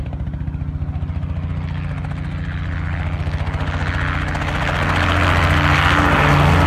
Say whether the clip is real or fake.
real